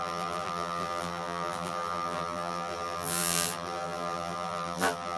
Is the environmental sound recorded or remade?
remade